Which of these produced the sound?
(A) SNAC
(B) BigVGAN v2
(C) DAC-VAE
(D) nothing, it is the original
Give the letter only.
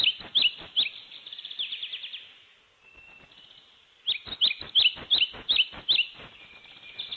D